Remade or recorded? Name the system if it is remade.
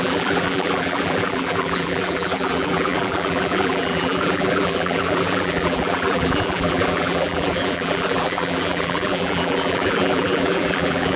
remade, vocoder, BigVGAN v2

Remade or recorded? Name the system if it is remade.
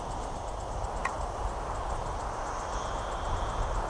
recorded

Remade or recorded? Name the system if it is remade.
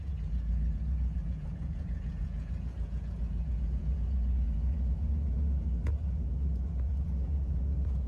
remade, vocoder, Vocos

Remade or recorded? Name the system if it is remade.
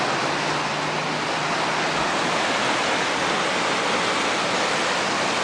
recorded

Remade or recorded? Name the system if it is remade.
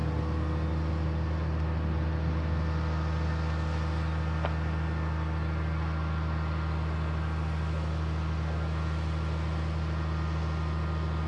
recorded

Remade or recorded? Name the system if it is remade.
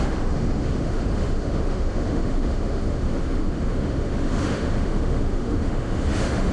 remade, autoencoder, DAC-VAE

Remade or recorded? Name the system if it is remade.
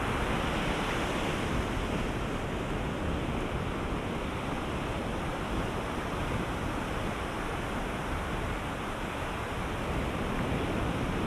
recorded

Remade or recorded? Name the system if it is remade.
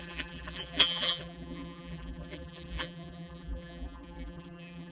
remade, vocoder, BigVGAN v2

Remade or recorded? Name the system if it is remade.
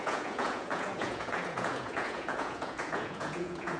remade, vocoder, Vocos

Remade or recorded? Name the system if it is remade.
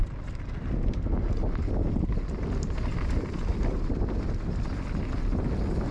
recorded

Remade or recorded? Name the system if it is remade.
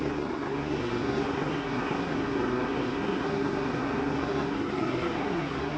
remade, codec, SNAC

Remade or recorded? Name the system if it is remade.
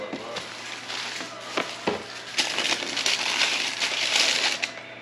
recorded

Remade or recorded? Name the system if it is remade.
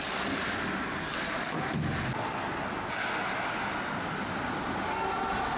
recorded